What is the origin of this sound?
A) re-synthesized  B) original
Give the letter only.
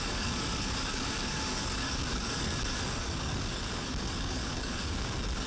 A